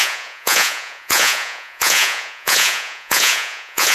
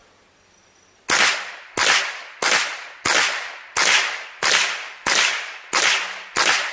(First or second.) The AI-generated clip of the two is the first